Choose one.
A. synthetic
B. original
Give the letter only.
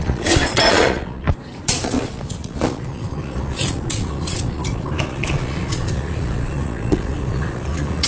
A